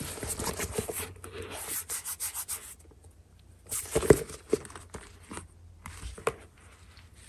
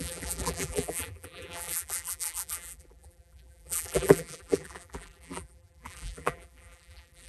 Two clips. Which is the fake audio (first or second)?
second